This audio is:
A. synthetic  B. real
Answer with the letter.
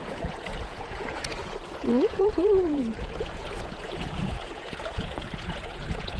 A